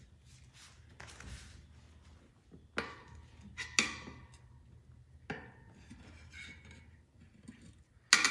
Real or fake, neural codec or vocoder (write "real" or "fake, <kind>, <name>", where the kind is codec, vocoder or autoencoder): real